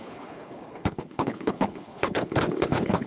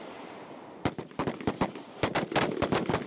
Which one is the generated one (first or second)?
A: first